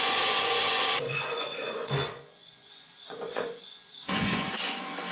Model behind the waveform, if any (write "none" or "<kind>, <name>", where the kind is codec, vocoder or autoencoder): vocoder, Vocos